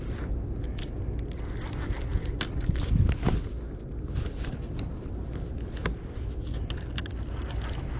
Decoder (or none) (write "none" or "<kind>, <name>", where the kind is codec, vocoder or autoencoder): none